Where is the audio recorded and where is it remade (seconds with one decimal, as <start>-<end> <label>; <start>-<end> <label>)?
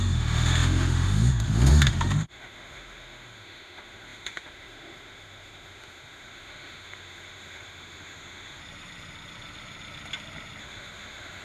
0.0-8.6 remade; 8.6-10.6 recorded; 10.6-11.4 remade